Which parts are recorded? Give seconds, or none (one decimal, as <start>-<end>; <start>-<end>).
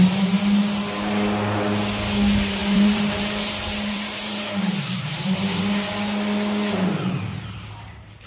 0.0-2.6; 5.6-8.3